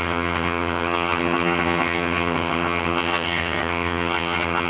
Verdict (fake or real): fake